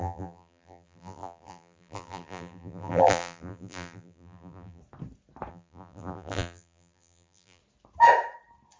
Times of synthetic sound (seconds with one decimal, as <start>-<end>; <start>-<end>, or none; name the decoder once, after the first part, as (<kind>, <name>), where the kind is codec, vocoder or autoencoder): 0.0-4.8 (vocoder, BigVGAN v2); 5.5-7.6